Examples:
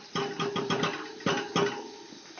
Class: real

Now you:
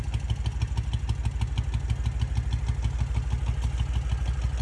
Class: real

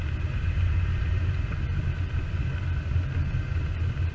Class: real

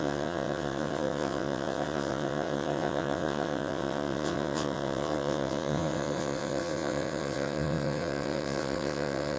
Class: fake